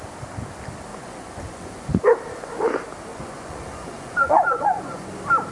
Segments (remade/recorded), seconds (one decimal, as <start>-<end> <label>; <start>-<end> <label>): 0.0-0.9 recorded; 0.9-2.0 remade; 2.0-3.1 recorded; 3.1-5.1 remade; 5.1-5.5 recorded